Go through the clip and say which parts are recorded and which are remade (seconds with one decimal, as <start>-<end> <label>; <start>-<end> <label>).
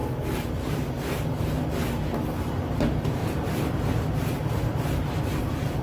0.0-5.8 recorded